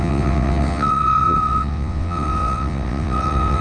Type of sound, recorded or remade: remade